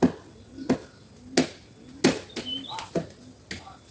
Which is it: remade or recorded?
recorded